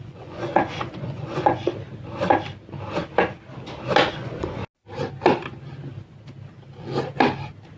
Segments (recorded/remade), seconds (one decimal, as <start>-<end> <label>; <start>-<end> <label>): 0.0-1.7 remade; 1.7-4.1 recorded; 4.1-4.6 remade; 4.6-7.8 recorded